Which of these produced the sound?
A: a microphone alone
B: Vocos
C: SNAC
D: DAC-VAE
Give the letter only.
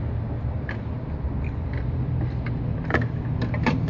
A